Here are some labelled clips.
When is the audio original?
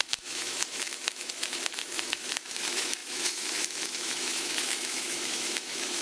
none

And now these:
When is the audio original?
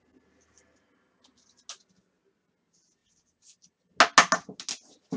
0.0-5.2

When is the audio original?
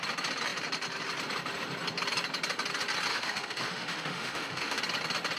0.0-3.1; 4.8-5.4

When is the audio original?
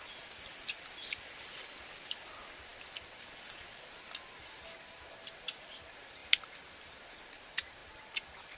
0.0-8.6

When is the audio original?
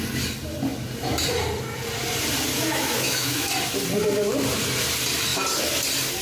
0.0-2.5; 3.5-6.2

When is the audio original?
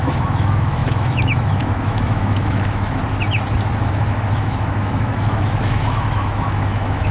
3.0-3.8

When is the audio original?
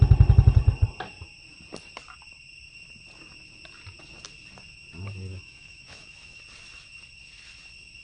0.0-5.3; 6.4-8.0